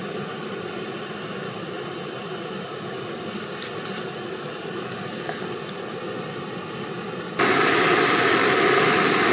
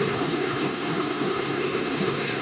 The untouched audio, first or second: first